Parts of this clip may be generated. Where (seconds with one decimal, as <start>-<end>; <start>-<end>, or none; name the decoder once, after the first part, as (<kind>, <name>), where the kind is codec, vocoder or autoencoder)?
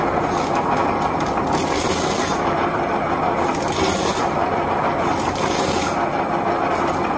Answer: 1.6-5.9 (vocoder, BigVGAN v2)